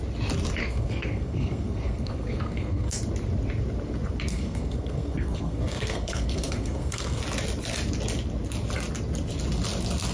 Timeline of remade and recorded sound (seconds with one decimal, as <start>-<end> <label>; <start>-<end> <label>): 0.0-0.6 recorded; 0.6-3.0 remade; 3.0-4.3 recorded; 4.3-7.2 remade; 7.2-10.1 recorded

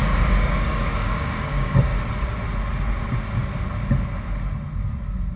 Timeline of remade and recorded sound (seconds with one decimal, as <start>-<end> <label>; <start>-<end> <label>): 0.0-1.9 remade; 1.9-5.4 recorded